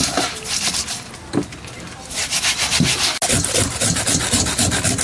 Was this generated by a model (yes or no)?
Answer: no